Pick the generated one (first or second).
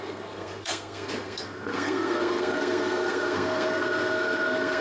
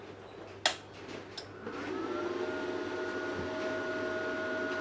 first